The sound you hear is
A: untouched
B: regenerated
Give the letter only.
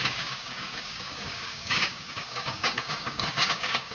B